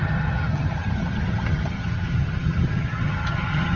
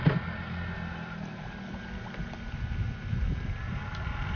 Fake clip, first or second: first